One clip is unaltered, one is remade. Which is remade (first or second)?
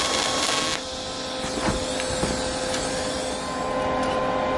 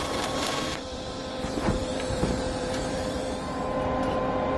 second